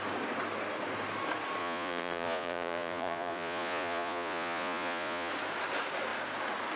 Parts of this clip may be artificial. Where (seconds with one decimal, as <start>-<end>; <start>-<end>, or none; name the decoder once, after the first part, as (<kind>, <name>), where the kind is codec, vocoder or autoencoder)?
1.6-5.3 (vocoder, Vocos)